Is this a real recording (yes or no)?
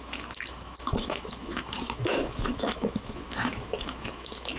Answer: no